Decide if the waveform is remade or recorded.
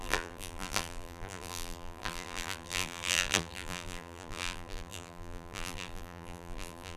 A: remade